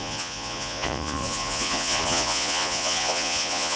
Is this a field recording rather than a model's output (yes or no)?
no